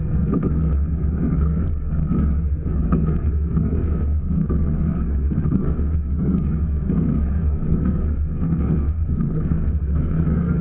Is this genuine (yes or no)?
no